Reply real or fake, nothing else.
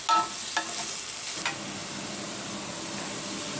real